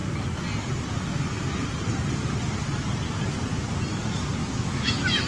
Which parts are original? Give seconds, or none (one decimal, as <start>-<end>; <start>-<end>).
0.0-4.4